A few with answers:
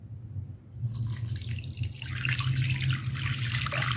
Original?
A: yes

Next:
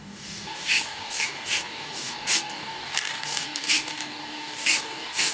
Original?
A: no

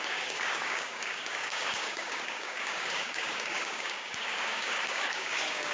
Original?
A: no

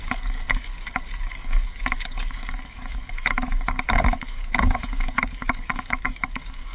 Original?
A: no